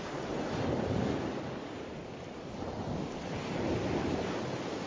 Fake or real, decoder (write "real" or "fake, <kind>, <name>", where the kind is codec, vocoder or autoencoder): real